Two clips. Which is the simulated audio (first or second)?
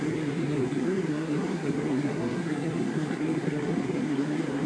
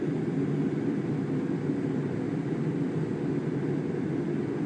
first